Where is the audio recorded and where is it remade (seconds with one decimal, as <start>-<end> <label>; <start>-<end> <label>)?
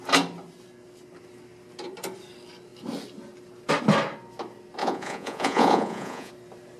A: 0.0-4.8 recorded; 4.8-6.3 remade; 6.3-6.8 recorded